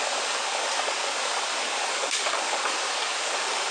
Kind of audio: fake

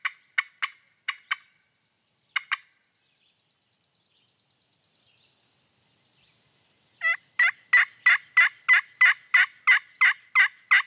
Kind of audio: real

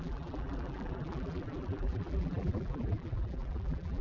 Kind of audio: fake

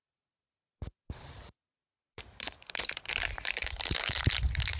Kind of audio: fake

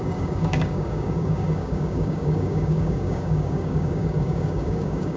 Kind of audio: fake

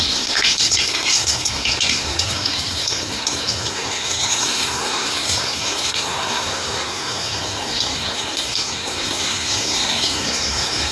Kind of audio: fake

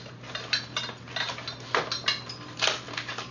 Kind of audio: real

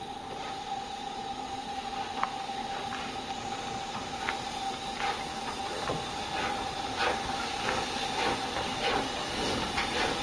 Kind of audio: real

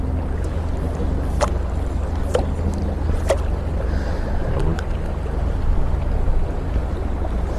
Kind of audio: real